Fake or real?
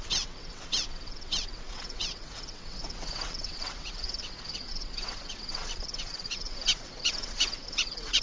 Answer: fake